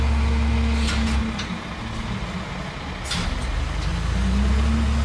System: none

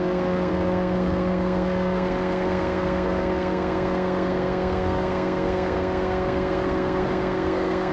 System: codec, SNAC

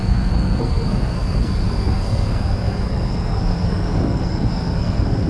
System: codec, SNAC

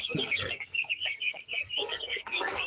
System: codec, SNAC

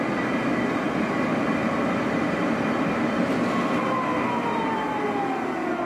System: none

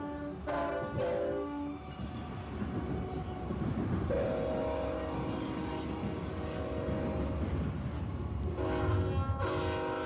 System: none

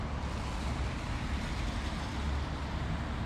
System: none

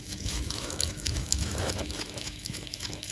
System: autoencoder, DAC-VAE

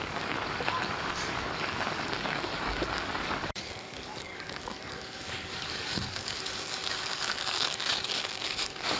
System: codec, DAC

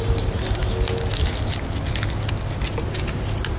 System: none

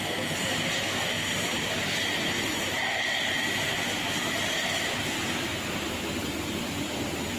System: none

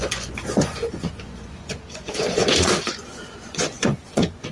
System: vocoder, Vocos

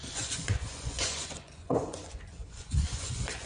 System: vocoder, Vocos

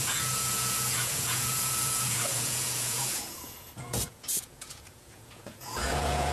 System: vocoder, Vocos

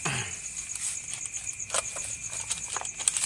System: none